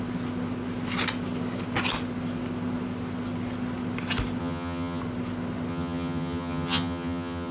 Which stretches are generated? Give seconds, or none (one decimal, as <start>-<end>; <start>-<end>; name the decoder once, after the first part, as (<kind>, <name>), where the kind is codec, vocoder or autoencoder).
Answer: 4.4-5.0 (vocoder, HiFi-GAN); 5.7-7.5